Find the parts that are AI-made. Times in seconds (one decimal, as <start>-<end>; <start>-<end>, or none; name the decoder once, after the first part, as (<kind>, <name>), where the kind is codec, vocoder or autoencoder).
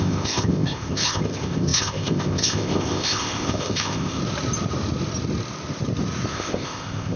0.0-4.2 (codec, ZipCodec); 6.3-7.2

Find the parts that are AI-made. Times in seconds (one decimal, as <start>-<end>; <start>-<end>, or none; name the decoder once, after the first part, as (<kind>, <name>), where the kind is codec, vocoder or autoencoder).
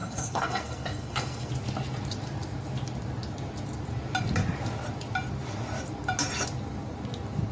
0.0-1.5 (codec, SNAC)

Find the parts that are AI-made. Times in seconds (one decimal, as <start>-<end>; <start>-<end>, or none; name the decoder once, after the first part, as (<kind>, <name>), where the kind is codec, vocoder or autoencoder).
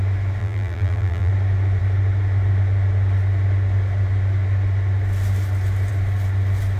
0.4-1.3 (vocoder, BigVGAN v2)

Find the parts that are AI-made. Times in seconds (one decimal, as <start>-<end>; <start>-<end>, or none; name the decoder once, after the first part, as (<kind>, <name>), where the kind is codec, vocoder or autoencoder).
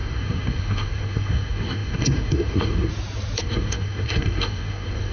0.0-2.9 (codec, SNAC); 3.4-5.1